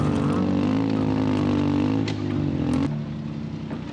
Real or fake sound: real